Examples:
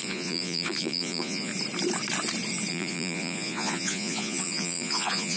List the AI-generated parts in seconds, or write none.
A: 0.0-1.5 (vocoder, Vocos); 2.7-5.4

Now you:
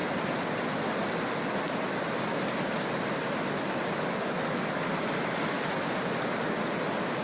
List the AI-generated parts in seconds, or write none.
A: none

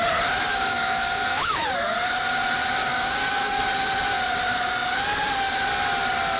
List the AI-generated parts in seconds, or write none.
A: 0.5-1.5 (codec, DAC); 2.8-3.6

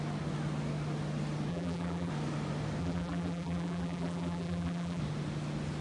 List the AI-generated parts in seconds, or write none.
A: 1.5-2.1 (vocoder, BigVGAN v2); 2.8-5.0

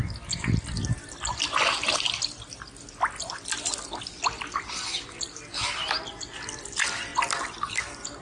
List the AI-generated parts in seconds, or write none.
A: 7.1-8.2 (vocoder, BigVGAN v2)

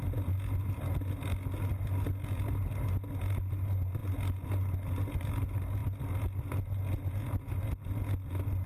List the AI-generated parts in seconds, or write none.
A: none

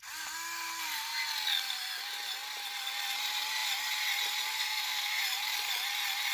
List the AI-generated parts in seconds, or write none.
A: 4.5-5.2 (codec, SNAC)